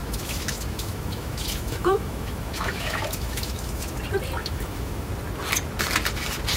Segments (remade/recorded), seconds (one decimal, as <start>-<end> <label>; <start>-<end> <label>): 0.0-4.0 remade; 4.0-4.4 recorded; 4.4-5.1 remade; 5.1-6.6 recorded